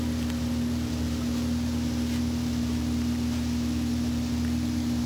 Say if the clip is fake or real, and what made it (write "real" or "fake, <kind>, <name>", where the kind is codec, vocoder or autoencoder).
fake, vocoder, BigVGAN v2